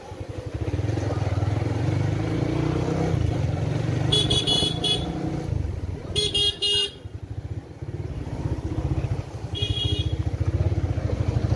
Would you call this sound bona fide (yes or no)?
yes